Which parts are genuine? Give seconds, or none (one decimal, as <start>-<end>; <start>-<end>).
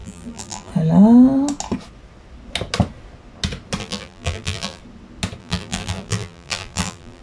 0.7-3.8; 4.8-5.4